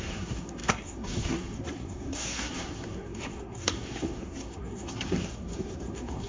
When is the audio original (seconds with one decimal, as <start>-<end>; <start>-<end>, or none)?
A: none